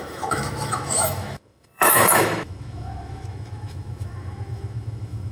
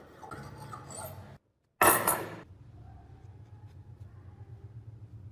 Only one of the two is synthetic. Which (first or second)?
first